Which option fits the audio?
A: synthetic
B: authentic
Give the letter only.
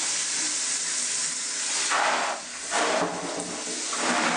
B